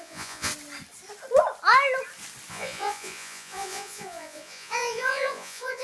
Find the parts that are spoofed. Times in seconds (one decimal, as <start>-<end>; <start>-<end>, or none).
0.0-0.5; 2.5-5.8